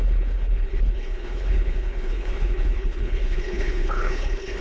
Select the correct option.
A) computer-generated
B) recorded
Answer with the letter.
A